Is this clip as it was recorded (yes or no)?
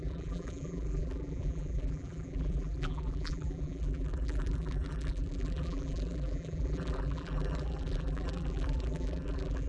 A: no